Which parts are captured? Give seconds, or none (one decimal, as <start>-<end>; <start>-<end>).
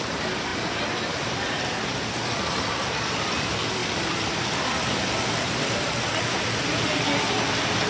0.0-7.9